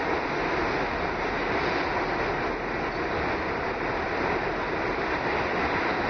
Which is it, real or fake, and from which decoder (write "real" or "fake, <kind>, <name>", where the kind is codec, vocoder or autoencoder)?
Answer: real